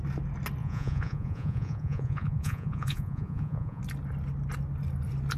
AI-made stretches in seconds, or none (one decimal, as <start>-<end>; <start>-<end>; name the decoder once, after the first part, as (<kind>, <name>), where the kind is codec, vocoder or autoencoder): 0.6-3.8 (vocoder, Vocos)